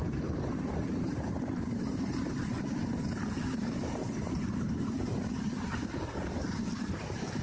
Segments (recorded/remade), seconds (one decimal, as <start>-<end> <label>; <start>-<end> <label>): 0.0-3.2 remade; 3.2-4.0 recorded; 4.0-5.9 remade; 5.9-7.4 recorded